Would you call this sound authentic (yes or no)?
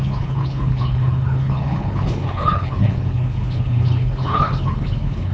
no